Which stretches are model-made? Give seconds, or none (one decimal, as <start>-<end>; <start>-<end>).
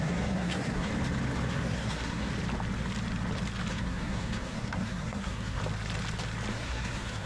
0.0-0.9; 1.5-2.3; 3.7-5.6; 6.5-7.3